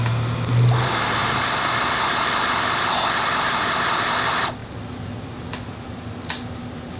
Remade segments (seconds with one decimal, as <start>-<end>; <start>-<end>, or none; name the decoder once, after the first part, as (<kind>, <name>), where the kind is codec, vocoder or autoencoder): none